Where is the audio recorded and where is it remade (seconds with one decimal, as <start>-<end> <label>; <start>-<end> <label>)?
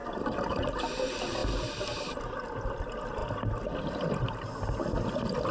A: 0.0-5.5 recorded